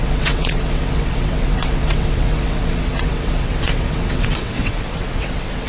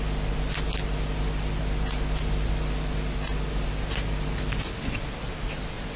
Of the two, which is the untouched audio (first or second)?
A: second